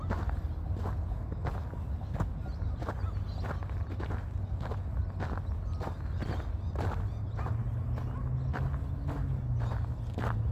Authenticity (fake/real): real